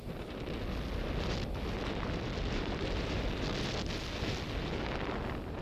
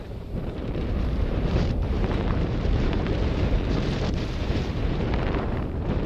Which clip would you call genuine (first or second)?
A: first